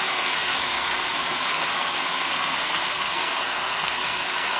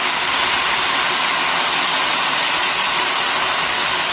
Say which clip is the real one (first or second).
second